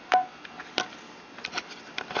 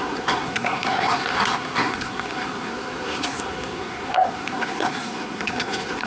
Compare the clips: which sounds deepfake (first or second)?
second